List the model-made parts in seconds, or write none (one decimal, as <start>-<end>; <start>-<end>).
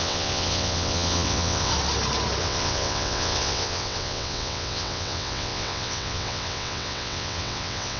0.0-1.7; 2.4-8.0